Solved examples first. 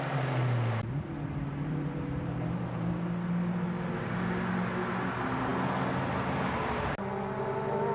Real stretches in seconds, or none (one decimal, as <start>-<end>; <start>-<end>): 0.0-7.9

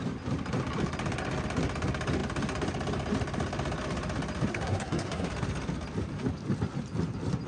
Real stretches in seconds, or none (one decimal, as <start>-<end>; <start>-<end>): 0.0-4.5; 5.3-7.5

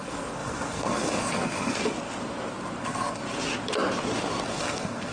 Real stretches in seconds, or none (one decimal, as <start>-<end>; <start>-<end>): 1.8-2.8; 3.2-4.5